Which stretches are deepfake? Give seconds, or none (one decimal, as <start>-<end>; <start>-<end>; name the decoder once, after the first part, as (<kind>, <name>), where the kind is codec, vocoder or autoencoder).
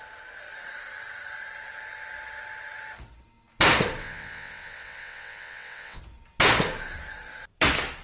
4.0-6.0 (vocoder, WaveNeXt)